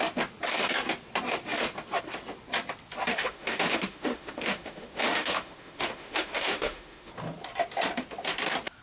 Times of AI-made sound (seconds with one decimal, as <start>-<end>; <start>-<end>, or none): 3.1-7.1